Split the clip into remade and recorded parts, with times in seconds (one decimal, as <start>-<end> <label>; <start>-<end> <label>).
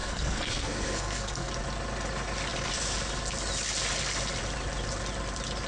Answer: 0.0-1.5 remade; 1.5-5.7 recorded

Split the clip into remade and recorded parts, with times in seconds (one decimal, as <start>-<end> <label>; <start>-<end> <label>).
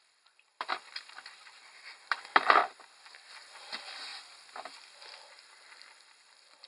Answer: 0.0-2.6 remade; 2.6-3.3 recorded; 3.3-4.1 remade; 4.1-5.2 recorded; 5.2-6.7 remade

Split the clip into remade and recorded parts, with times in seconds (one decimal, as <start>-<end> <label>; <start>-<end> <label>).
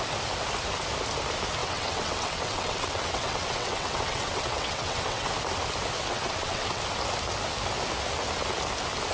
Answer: 0.0-1.6 recorded; 1.6-5.3 remade; 5.3-6.1 recorded; 6.1-6.8 remade; 6.8-9.1 recorded